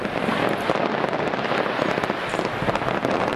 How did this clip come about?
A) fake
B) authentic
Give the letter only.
B